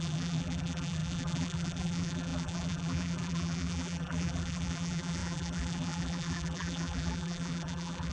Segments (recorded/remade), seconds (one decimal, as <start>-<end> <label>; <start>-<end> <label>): 0.0-8.1 remade